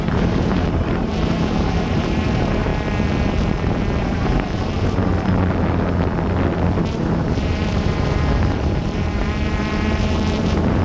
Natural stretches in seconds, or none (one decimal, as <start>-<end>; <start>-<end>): 2.7-4.0; 5.1-6.9